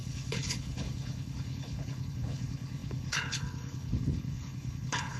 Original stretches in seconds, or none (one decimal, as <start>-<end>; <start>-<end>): none